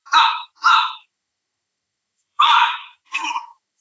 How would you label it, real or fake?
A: fake